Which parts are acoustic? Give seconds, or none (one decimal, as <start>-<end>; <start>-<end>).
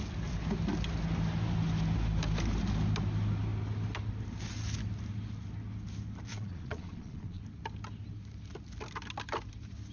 0.0-6.3; 7.4-9.9